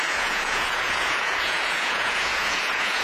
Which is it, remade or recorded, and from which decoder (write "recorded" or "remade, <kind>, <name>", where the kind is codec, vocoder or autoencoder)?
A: remade, vocoder, Vocos